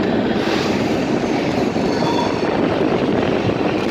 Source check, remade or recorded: recorded